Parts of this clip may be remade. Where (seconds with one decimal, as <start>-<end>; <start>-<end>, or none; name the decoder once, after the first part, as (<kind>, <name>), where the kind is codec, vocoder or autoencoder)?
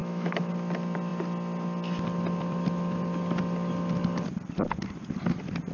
0.0-0.5 (autoencoder, DAC-VAE)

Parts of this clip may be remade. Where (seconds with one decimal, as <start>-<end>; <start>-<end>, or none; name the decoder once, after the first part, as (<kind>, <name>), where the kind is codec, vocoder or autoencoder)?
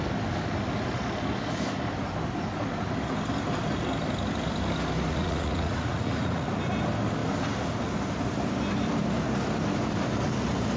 5.1-6.5 (vocoder, Vocos)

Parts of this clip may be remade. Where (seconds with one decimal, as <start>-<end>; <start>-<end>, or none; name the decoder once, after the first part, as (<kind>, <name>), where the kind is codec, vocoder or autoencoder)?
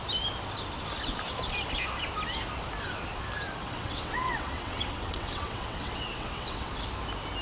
3.6-6.7 (vocoder, WaveNeXt)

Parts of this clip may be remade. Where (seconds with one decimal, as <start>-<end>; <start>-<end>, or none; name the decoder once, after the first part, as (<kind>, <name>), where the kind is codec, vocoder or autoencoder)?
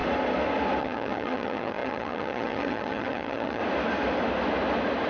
0.8-3.6 (vocoder, HiFi-GAN)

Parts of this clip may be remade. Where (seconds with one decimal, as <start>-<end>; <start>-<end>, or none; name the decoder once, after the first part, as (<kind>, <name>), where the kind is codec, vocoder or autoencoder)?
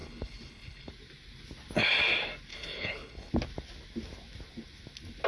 0.0-0.9 (codec, HILCodec); 2.5-3.3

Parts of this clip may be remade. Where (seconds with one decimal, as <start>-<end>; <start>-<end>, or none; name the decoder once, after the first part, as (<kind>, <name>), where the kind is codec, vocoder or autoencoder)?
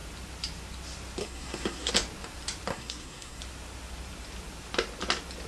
1.2-1.9 (codec, SNAC); 2.7-3.4